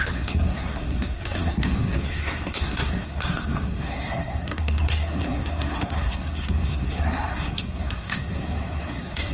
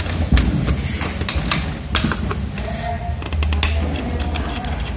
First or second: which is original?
second